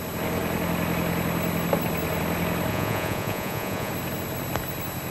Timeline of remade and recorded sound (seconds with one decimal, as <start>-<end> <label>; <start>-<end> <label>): 0.0-2.7 recorded; 2.7-3.9 remade; 3.9-5.1 recorded